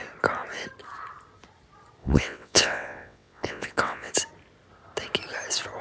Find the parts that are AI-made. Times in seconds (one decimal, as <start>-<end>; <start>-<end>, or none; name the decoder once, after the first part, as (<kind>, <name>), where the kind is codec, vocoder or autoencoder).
2.0-4.1 (vocoder, WaveNeXt)

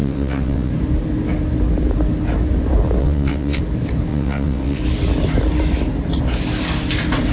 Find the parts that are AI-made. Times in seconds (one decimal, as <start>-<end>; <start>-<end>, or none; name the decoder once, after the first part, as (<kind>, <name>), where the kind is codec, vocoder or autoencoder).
0.0-0.7 (vocoder, WaveNeXt); 3.0-3.6; 4.1-4.8